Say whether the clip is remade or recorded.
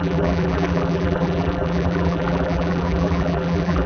remade